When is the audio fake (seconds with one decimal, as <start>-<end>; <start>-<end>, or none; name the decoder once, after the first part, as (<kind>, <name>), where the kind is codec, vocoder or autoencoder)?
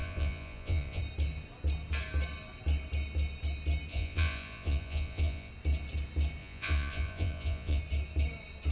0.0-1.0 (vocoder, Vocos); 3.9-5.5; 6.4-7.8